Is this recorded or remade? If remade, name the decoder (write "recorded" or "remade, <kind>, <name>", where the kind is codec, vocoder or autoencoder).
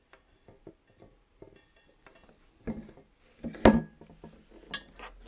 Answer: recorded